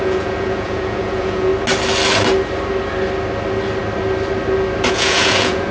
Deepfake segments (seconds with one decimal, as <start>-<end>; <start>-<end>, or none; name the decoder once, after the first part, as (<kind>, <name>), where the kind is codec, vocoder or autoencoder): 0.0-1.5 (vocoder, Vocos); 4.9-5.7